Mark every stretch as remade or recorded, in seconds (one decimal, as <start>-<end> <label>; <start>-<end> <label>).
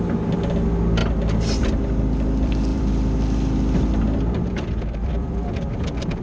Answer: 0.0-1.0 remade; 1.0-1.8 recorded; 1.8-6.2 remade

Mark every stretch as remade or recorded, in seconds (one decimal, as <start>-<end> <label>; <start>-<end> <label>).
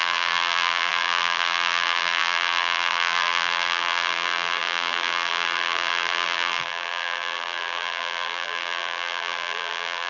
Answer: 0.0-10.1 remade